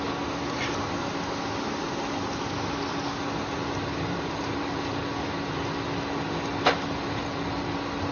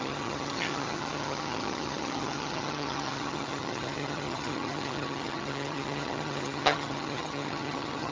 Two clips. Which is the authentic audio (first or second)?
first